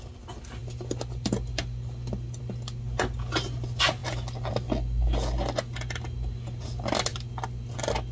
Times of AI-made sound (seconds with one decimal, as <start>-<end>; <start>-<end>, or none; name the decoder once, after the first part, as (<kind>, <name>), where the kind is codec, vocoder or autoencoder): none